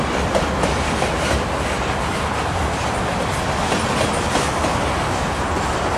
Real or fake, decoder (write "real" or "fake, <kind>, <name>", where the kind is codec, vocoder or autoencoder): real